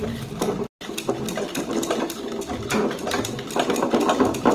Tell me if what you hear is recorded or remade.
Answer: recorded